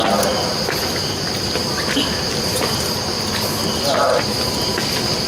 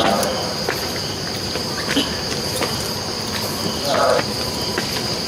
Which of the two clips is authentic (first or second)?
first